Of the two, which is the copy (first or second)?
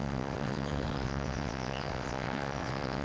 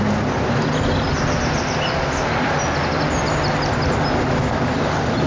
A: first